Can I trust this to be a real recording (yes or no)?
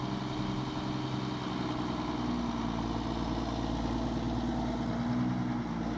yes